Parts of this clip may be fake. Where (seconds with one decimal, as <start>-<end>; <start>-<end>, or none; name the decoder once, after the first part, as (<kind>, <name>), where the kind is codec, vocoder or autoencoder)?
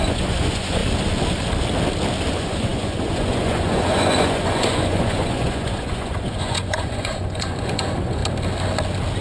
0.0-0.8 (vocoder, Vocos); 2.3-8.2